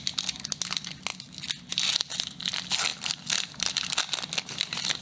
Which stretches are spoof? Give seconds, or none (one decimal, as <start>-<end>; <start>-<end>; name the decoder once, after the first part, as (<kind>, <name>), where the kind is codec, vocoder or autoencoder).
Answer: none

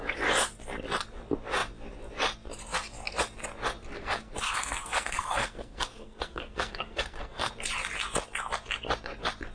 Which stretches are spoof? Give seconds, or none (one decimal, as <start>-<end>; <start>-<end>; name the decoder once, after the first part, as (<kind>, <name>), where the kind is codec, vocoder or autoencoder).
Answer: 3.9-7.5 (codec, SNAC)

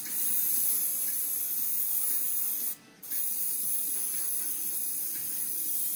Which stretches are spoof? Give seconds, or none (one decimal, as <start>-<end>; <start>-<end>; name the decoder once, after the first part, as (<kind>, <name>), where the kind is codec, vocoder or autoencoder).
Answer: none

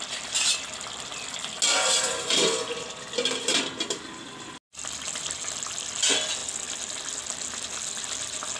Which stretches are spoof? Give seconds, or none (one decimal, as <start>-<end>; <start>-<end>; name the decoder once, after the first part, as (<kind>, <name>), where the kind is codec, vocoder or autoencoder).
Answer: none

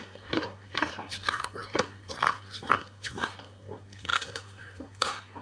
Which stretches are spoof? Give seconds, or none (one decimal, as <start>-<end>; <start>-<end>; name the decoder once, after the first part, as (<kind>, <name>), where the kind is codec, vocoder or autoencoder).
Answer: 0.0-5.4 (codec, SNAC)

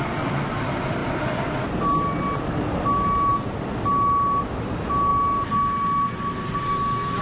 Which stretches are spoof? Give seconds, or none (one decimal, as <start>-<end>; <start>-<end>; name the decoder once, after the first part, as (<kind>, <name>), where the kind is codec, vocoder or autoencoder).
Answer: none

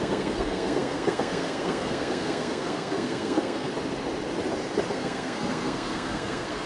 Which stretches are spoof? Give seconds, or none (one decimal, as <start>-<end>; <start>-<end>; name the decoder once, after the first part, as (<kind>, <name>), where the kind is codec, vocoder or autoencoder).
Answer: 0.0-3.7 (codec, SNAC); 4.9-6.7

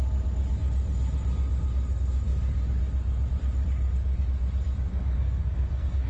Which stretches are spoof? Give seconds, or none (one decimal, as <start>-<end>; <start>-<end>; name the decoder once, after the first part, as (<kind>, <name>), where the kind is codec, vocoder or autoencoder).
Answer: 4.9-6.1 (codec, SNAC)